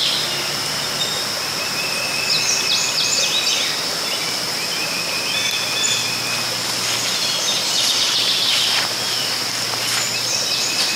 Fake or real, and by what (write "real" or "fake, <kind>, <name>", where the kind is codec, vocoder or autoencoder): real